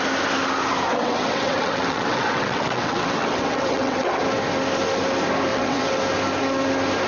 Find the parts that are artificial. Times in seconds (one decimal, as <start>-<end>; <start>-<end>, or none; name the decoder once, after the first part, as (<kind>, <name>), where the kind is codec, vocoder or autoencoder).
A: 0.9-4.2 (vocoder, WaveNeXt); 5.5-6.0

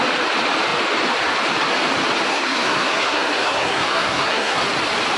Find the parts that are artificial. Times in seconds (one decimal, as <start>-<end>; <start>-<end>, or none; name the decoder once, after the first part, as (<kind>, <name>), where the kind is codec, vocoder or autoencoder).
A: 2.3-4.6 (codec, SNAC)

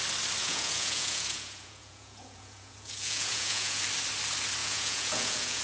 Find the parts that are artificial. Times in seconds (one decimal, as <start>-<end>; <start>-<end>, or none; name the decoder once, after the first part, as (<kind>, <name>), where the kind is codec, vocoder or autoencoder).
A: 0.4-3.8 (vocoder, Vocos); 4.6-5.6

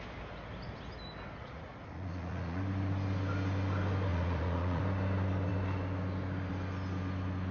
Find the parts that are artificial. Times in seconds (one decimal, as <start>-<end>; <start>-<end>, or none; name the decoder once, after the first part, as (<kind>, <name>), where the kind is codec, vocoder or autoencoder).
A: 1.4-2.6 (vocoder, Vocos); 4.1-4.8

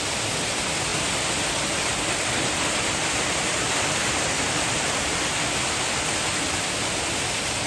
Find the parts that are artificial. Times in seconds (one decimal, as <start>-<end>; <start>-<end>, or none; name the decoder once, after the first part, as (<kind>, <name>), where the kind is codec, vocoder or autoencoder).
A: 0.0-7.7 (vocoder, BigVGAN v2)

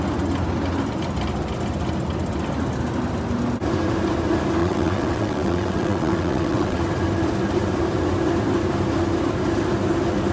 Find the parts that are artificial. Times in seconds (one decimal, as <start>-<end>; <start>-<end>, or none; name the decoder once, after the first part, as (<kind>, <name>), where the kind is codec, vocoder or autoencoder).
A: 4.6-6.8 (vocoder, WaveNeXt)

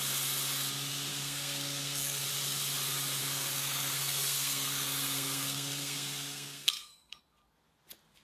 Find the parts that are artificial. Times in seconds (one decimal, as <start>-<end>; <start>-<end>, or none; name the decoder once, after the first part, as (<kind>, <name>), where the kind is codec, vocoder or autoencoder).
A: 1.1-2.2 (codec, SNAC); 3.2-7.2

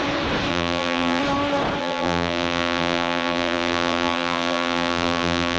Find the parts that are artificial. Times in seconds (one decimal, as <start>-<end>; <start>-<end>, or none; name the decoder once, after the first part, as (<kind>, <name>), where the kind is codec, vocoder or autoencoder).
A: 0.5-1.2 (vocoder, BigVGAN v2); 1.8-5.6